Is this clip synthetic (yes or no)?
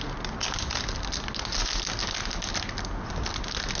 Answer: no